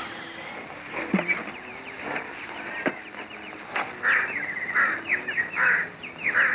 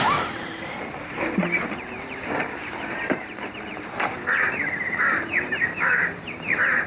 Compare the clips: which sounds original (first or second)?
first